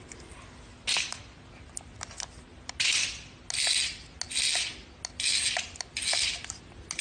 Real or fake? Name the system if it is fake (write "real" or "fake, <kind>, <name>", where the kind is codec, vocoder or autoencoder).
real